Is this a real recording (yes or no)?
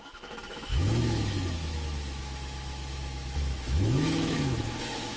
no